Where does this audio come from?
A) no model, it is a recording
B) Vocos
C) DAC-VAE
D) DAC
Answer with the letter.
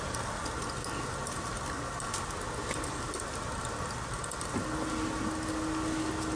A